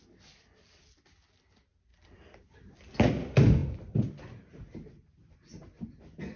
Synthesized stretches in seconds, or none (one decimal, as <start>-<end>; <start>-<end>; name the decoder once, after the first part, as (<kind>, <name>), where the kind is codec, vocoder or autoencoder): none